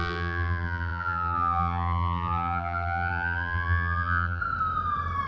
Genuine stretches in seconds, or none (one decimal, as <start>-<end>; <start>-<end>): 4.4-5.3